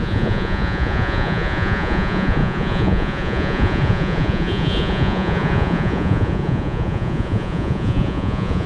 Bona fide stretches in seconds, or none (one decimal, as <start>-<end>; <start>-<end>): none